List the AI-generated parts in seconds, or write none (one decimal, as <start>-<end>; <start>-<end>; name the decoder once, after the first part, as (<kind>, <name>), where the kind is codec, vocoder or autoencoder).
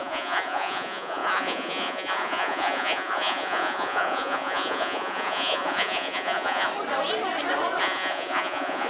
0.0-6.7 (vocoder, Vocos); 7.8-8.9